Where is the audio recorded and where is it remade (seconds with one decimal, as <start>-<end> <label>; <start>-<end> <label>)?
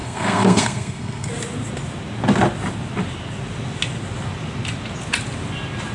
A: 0.0-1.3 remade; 1.3-5.9 recorded